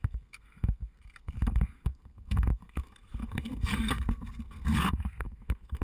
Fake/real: fake